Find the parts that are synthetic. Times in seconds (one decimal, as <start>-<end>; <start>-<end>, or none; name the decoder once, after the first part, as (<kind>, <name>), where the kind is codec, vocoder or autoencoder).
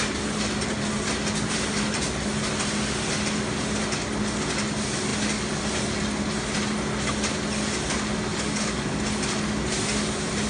8.3-9.0 (codec, DAC)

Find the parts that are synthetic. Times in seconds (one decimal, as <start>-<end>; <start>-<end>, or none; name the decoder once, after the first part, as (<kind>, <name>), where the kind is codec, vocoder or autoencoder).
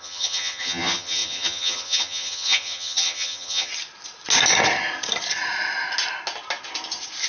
0.0-3.7 (vocoder, HiFi-GAN)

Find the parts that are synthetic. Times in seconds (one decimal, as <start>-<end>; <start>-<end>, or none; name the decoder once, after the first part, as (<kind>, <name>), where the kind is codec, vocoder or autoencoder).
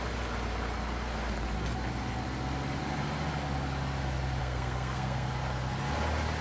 4.4-5.3 (codec, SNAC)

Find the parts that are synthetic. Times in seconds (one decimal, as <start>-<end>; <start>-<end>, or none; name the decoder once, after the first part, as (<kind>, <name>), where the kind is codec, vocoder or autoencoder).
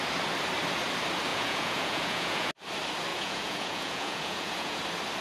1.3-2.5 (vocoder, Vocos); 3.1-4.8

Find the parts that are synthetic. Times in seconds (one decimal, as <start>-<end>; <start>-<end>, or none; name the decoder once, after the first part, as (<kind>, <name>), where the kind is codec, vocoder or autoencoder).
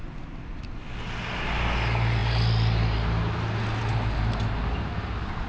none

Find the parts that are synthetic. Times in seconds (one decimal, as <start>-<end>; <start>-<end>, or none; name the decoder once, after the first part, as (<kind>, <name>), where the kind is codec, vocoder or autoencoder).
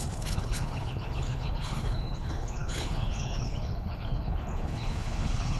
0.0-5.6 (codec, HILCodec)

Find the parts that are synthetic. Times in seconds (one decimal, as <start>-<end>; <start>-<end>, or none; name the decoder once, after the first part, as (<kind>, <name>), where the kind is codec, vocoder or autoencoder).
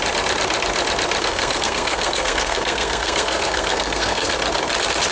1.2-4.3 (codec, SNAC)